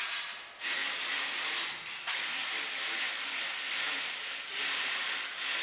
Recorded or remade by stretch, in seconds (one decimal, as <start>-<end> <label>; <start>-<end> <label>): 0.0-2.4 recorded; 2.4-5.1 remade; 5.1-5.6 recorded